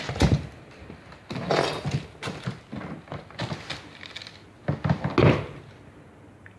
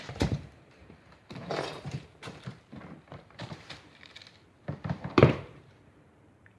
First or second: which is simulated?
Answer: second